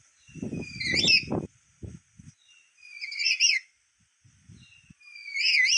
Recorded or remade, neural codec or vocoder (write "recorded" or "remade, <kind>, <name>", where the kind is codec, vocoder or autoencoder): recorded